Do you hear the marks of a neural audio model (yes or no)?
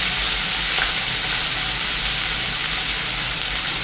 no